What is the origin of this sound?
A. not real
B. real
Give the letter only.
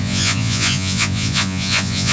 A